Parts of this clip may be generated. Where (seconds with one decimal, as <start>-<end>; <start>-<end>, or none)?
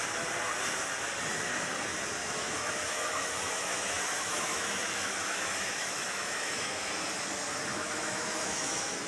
2.2-6.9; 7.7-9.1